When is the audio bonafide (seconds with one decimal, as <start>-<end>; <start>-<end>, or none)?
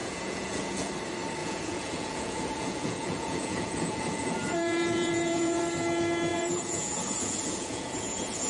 0.9-1.4; 5.6-6.3